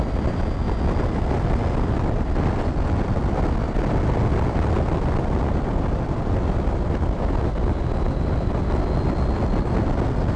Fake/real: real